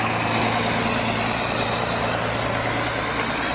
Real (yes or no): yes